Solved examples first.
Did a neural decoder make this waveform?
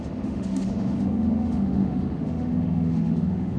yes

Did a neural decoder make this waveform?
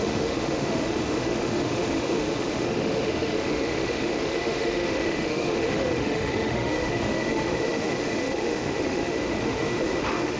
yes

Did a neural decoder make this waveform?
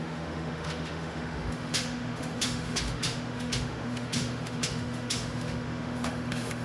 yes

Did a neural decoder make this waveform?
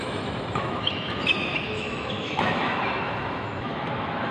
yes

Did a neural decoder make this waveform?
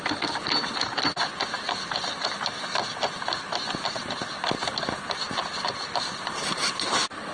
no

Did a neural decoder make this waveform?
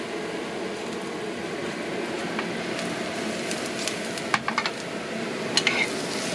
no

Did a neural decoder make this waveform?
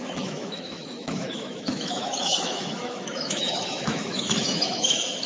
yes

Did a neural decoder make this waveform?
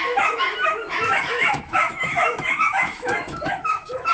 yes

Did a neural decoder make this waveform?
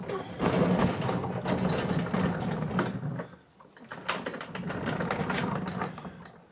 no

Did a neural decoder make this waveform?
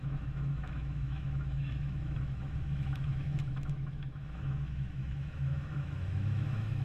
yes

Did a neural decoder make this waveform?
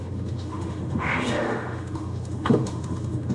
yes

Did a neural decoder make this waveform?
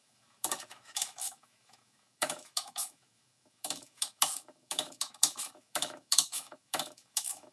yes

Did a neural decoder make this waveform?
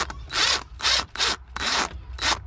no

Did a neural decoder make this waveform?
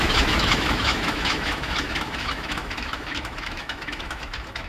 yes